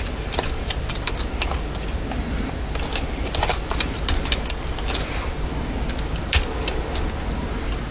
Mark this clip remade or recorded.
recorded